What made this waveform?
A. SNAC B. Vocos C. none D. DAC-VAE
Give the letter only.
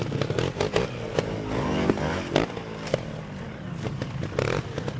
C